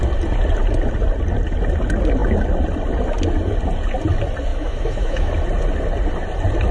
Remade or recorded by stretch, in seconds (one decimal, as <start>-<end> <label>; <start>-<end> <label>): 0.0-4.5 recorded; 4.5-5.3 remade; 5.3-6.7 recorded